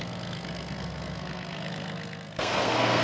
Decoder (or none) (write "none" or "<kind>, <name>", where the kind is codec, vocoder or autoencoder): codec, SNAC